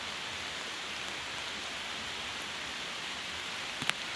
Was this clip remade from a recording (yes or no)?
no